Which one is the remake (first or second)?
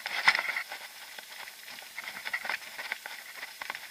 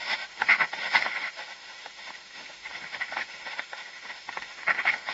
second